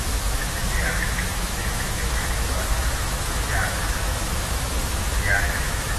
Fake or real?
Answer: fake